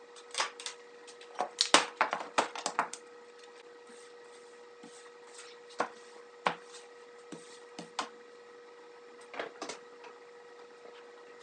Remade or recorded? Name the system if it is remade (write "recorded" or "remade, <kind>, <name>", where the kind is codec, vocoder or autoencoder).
recorded